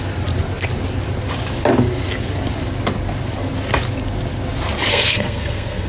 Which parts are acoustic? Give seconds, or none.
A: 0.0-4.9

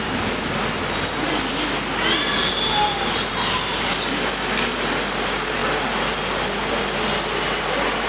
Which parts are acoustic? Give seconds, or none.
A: 0.0-8.1